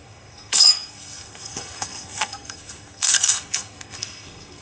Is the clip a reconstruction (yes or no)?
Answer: yes